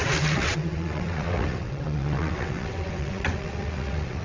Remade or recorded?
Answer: remade